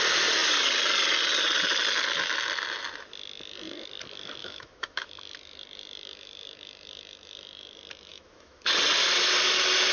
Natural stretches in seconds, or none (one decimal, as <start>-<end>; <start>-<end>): 0.0-4.4; 5.1-8.1; 8.7-9.9